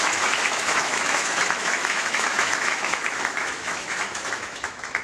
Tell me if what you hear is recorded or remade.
remade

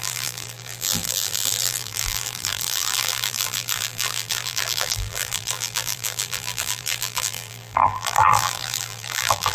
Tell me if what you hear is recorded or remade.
remade